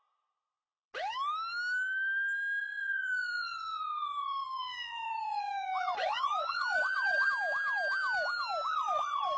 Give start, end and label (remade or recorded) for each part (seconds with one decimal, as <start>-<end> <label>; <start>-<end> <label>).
0.0-2.6 recorded; 2.6-7.3 remade; 7.3-8.7 recorded; 8.7-9.4 remade